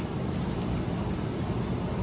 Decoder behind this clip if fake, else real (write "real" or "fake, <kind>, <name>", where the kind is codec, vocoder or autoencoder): real